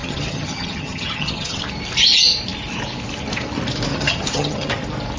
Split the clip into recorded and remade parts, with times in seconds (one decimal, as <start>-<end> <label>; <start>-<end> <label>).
0.0-1.6 remade; 1.6-3.9 recorded; 3.9-4.7 remade; 4.7-5.2 recorded